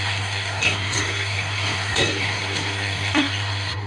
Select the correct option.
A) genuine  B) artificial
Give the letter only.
B